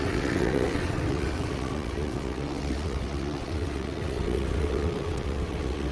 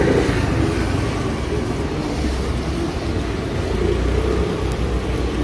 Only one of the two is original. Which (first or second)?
second